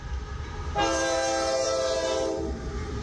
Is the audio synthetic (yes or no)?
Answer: yes